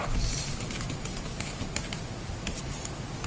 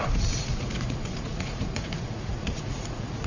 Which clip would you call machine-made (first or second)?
second